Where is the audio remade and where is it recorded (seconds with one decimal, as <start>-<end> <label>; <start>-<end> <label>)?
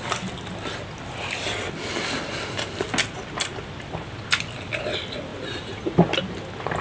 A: 0.0-5.3 recorded; 5.3-6.2 remade; 6.2-6.8 recorded